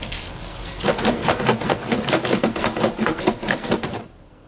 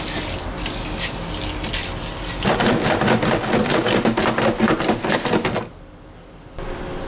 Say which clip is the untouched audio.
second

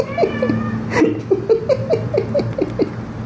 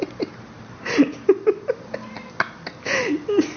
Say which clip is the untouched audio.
first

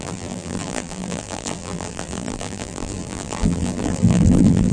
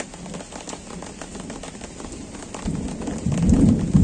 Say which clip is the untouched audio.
second